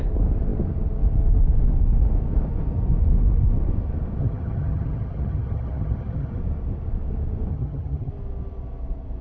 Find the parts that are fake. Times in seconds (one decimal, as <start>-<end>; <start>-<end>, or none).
4.2-6.4; 7.5-8.1